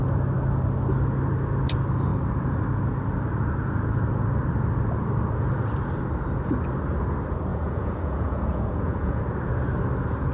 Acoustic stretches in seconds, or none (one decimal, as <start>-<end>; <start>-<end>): 0.0-7.5; 9.2-10.3